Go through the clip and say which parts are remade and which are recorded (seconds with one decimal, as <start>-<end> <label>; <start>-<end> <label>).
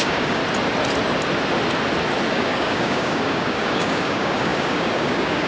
0.0-0.4 remade; 0.4-2.3 recorded; 2.3-5.5 remade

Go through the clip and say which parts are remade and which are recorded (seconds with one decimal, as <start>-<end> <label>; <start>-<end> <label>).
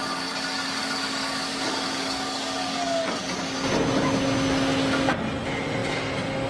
0.0-0.8 recorded; 0.8-3.7 remade; 3.7-6.5 recorded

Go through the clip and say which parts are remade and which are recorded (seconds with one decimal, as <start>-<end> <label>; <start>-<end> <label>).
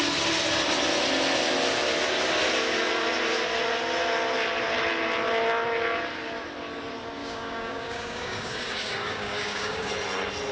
0.0-7.2 recorded; 7.2-9.9 remade; 9.9-10.5 recorded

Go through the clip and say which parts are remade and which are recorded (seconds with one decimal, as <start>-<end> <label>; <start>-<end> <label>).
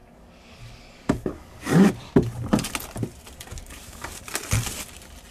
0.0-2.1 remade; 2.1-3.5 recorded; 3.5-4.2 remade; 4.2-5.3 recorded